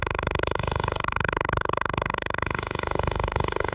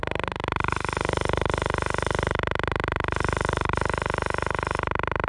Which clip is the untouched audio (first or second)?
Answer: second